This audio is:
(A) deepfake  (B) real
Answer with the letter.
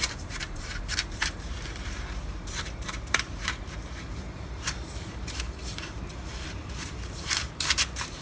A